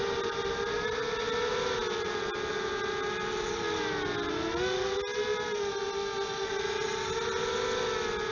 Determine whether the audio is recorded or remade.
recorded